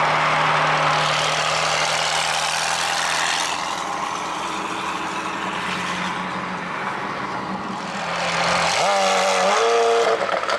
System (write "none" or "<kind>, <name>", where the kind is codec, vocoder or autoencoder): none